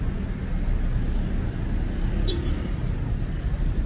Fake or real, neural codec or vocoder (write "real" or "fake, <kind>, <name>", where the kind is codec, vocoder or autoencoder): real